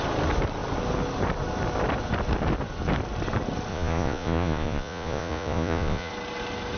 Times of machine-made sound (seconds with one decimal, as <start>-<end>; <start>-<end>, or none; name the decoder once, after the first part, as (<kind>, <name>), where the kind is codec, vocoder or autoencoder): 3.7-6.1 (vocoder, Vocos)